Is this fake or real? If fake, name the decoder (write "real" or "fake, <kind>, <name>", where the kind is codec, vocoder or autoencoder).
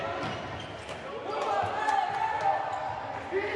real